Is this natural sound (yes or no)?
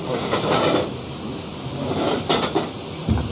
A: yes